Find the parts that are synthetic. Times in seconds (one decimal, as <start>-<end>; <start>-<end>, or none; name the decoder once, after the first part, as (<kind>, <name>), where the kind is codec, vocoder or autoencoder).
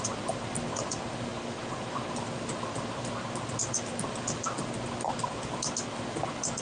none